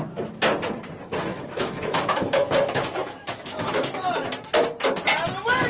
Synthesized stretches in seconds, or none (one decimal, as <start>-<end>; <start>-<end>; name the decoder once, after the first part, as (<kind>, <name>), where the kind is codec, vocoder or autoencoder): 1.3-4.1 (autoencoder, DAC-VAE)